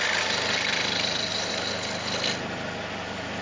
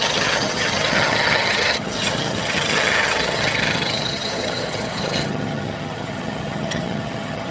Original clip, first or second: first